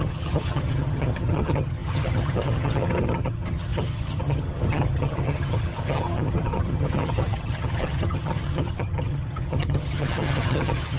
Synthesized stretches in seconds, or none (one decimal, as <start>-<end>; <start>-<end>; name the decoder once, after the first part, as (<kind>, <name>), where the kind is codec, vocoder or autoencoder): 0.0-11.0 (vocoder, HiFi-GAN)